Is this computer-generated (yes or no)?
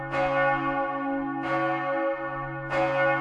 no